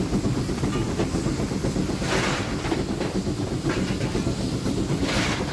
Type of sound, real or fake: real